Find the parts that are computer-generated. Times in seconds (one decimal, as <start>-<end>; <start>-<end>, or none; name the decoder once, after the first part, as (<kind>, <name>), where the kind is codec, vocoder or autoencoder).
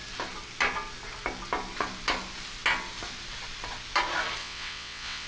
4.4-5.3 (vocoder, WaveNeXt)